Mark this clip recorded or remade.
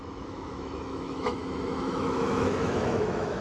remade